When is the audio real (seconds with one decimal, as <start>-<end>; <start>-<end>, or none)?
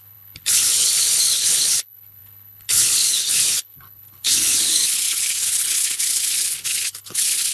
none